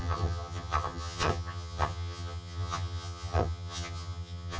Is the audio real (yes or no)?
no